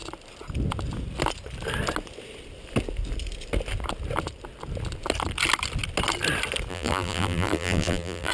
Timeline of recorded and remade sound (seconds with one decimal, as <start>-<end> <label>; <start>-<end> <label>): 0.0-6.7 recorded; 6.7-8.3 remade